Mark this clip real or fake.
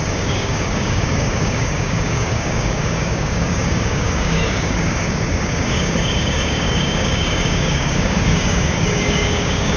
fake